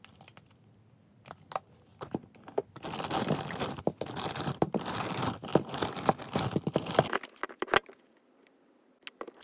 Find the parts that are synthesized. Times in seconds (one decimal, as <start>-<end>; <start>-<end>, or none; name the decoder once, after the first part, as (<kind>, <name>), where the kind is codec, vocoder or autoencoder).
none